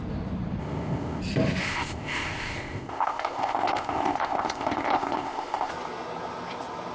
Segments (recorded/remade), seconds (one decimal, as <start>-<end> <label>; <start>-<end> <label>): 0.0-0.6 recorded; 0.6-1.2 remade; 1.2-1.6 recorded; 1.6-5.7 remade; 5.7-6.9 recorded

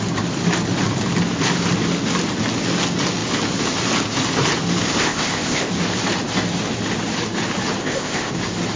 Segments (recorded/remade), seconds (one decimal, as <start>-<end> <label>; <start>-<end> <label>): 0.0-5.0 recorded; 5.0-5.7 remade; 5.7-7.8 recorded; 7.8-8.3 remade; 8.3-8.8 recorded